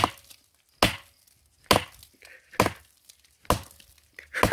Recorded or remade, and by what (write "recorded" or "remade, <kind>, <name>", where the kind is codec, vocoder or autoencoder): recorded